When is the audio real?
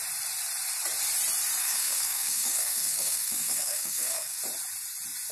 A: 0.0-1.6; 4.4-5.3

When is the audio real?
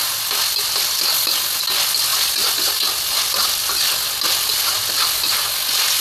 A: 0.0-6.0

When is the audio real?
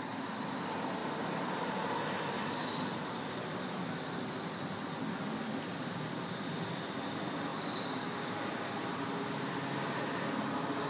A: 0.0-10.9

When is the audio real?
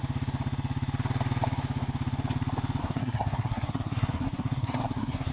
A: 0.0-2.8